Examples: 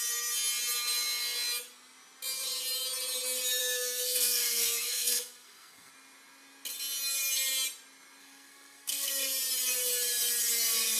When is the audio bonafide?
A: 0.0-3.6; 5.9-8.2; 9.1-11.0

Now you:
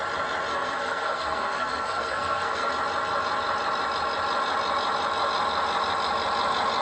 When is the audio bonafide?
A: 0.0-0.5; 2.7-6.8

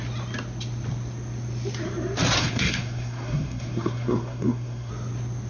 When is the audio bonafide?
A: 0.0-2.4; 4.9-5.5

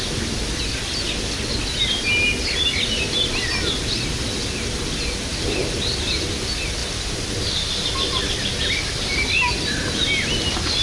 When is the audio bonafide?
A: 0.0-10.8

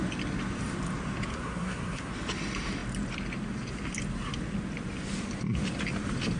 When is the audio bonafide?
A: 0.0-1.3; 2.1-6.4

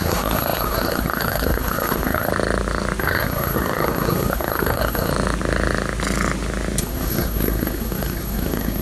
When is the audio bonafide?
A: 2.3-3.0; 5.1-6.8

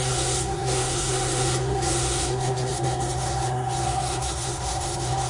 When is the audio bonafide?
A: none